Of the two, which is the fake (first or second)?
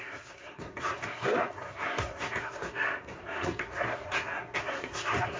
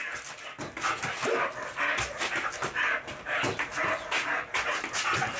first